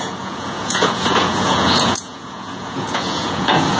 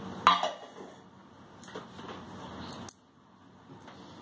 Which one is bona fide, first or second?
second